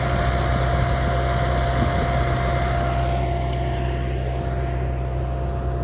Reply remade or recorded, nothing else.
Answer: recorded